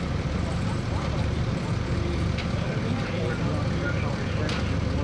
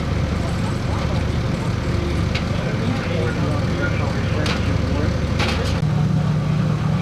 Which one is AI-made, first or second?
first